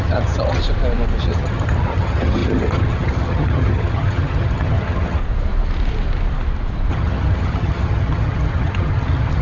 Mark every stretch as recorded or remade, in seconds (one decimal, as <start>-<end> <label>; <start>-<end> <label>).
0.0-0.6 remade; 0.6-1.2 recorded; 1.2-5.2 remade; 5.2-6.9 recorded; 6.9-9.4 remade